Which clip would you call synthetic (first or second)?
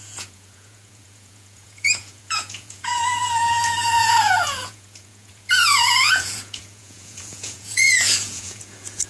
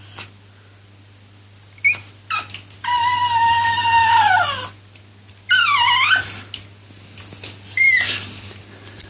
first